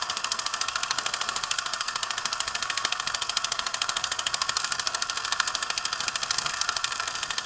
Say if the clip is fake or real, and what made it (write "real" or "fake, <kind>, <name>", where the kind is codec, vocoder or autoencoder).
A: fake, codec, SNAC